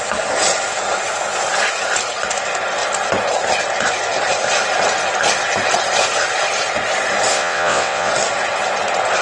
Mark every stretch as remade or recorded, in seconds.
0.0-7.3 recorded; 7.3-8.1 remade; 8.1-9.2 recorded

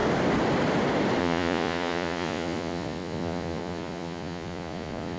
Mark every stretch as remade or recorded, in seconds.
0.0-1.2 recorded; 1.2-5.2 remade

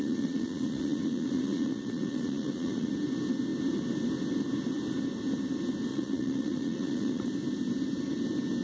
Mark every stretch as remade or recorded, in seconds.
0.0-2.9 remade; 2.9-5.9 recorded; 5.9-7.3 remade; 7.3-8.6 recorded

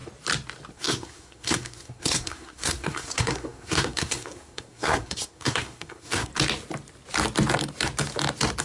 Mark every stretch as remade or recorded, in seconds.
0.0-0.7 recorded; 0.7-6.3 remade; 6.3-8.6 recorded

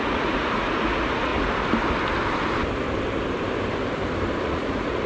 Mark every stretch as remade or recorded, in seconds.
0.0-1.3 remade; 1.3-4.4 recorded; 4.4-5.1 remade

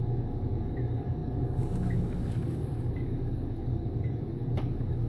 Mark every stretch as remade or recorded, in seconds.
0.0-5.1 remade

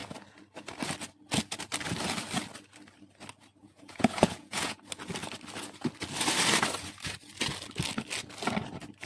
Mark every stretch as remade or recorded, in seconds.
0.0-3.6 recorded; 3.6-4.8 remade; 4.8-9.1 recorded

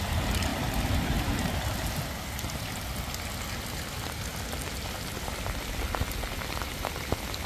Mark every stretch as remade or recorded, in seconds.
0.0-7.5 recorded